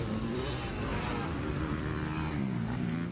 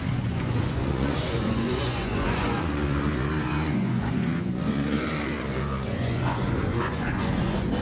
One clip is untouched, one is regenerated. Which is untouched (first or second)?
first